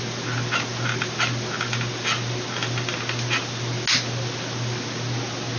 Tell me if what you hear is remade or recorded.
recorded